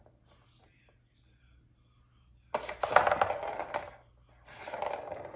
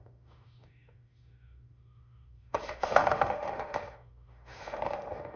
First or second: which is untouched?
first